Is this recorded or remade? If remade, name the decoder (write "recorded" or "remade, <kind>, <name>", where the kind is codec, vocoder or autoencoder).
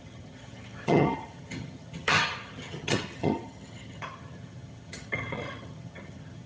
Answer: remade, vocoder, HiFi-GAN